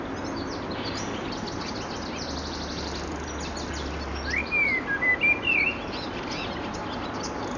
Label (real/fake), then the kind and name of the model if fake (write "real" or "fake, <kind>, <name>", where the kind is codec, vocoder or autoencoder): real